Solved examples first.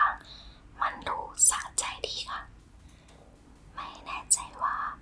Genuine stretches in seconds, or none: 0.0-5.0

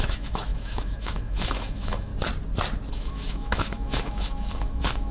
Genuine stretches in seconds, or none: 2.1-2.9

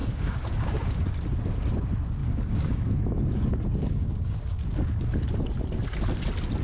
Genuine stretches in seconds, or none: 1.1-2.2; 2.9-3.8; 5.0-6.6

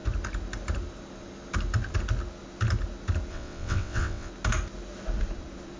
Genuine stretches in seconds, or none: 0.0-3.3; 4.3-5.8

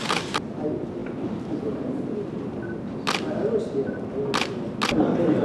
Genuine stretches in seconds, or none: 0.0-5.4

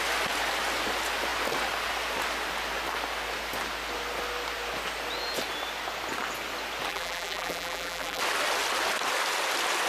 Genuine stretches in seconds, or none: 0.0-6.9; 8.2-9.9

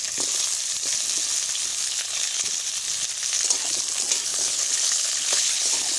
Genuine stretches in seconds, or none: 0.0-1.7; 2.7-4.3

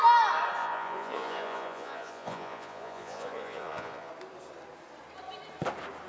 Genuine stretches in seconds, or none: 0.0-0.6; 4.1-6.1